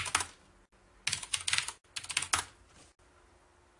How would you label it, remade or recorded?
recorded